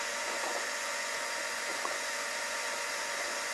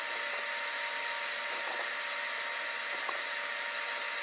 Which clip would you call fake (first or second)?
first